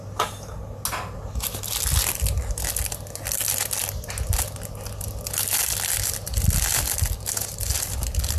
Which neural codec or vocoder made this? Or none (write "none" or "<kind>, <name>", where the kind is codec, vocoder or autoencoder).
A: none